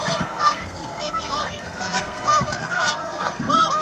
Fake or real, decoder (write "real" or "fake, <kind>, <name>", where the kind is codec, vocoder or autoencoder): fake, codec, SNAC